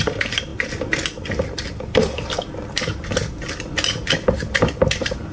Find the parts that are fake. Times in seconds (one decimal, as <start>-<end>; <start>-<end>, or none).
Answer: none